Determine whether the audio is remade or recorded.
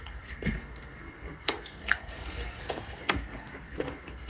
remade